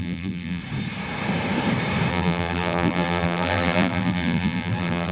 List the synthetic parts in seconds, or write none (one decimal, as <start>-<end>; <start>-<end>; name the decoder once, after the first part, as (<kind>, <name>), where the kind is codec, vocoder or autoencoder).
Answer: 0.0-0.6 (vocoder, BigVGAN v2); 2.1-5.1